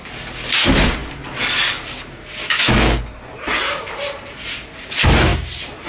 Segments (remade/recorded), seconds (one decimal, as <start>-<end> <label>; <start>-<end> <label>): 0.0-2.4 recorded; 2.4-3.0 remade; 3.0-5.9 recorded